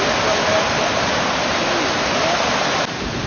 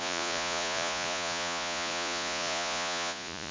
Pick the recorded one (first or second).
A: first